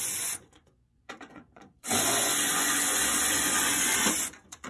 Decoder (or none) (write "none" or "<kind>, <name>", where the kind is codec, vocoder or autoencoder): vocoder, Vocos